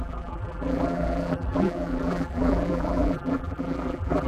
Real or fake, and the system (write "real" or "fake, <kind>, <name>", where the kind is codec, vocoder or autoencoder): fake, vocoder, BigVGAN v2